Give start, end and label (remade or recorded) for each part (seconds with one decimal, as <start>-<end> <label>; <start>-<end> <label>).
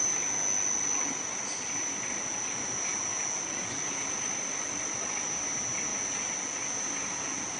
0.0-7.6 recorded